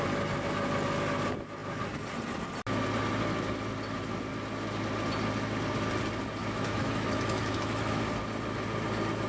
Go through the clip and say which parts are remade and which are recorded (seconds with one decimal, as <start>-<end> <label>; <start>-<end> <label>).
0.0-6.4 recorded; 6.4-8.0 remade; 8.0-9.3 recorded